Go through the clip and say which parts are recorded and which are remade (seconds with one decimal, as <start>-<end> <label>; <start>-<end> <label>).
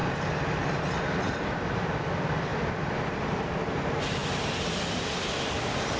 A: 0.0-1.6 remade; 1.6-2.5 recorded; 2.5-3.5 remade; 3.5-4.2 recorded; 4.2-4.8 remade; 4.8-6.0 recorded